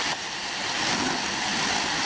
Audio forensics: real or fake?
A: real